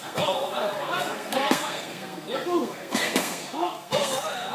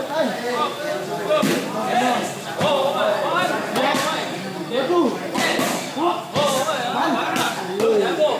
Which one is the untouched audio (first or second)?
second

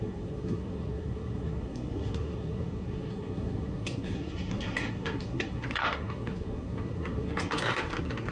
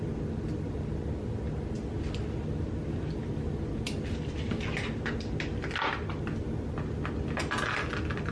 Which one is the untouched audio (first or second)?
second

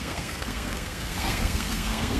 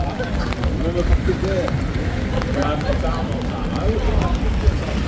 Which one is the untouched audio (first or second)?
second